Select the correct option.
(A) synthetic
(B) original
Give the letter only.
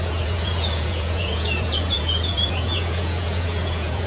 A